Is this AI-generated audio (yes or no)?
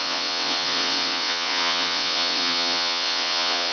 yes